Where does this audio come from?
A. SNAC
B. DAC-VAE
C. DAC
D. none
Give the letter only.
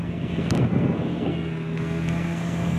A